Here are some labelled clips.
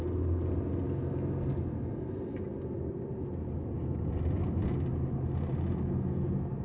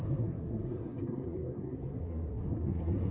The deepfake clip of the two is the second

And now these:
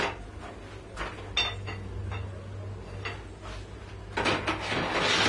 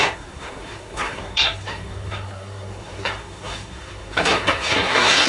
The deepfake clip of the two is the second